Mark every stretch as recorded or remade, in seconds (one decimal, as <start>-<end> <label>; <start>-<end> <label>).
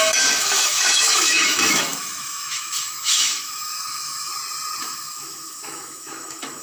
0.0-4.3 remade; 4.3-4.8 recorded; 4.8-6.6 remade